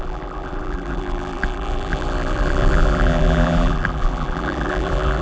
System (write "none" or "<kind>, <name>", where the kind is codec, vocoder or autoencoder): vocoder, BigVGAN v2